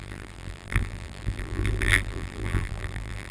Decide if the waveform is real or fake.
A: fake